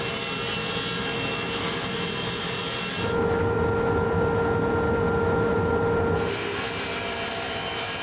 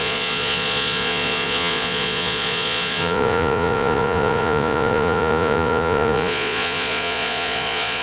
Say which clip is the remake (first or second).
second